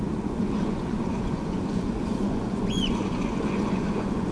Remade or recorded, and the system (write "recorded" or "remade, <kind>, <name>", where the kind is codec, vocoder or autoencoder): remade, vocoder, Vocos